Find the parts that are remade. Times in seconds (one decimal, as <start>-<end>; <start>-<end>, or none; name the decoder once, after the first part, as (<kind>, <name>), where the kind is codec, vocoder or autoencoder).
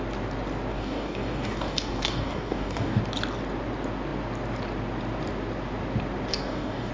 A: 0.7-3.0 (codec, DAC); 6.3-6.9